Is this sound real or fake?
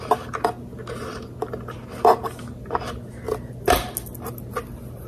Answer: real